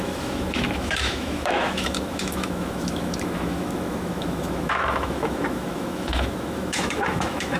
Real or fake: fake